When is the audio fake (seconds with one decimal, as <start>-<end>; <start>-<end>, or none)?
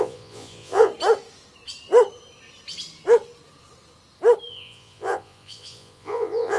0.0-0.9; 4.5-6.6